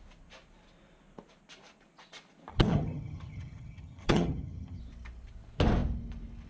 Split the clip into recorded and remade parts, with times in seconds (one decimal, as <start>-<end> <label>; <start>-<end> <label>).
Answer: 0.0-2.5 recorded; 2.5-4.8 remade; 4.8-6.5 recorded